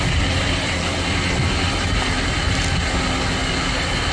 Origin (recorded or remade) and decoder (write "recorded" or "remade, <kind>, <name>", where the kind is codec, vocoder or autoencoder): recorded